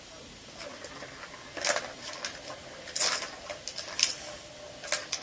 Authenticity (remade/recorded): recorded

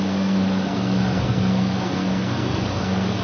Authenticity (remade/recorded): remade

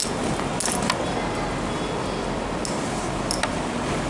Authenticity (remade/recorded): recorded